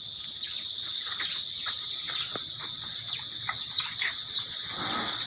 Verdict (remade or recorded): recorded